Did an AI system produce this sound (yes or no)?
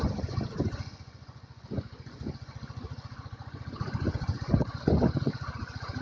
yes